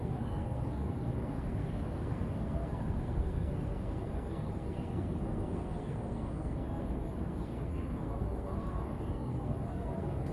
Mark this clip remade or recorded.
remade